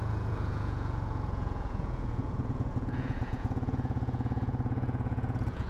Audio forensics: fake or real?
fake